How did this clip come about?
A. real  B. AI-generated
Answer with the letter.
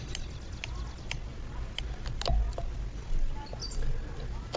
A